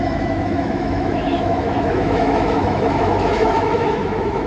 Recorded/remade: remade